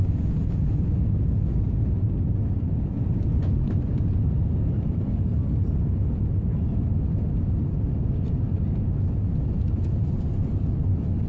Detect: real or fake real